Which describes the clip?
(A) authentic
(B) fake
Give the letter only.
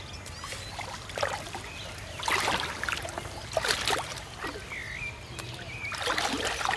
A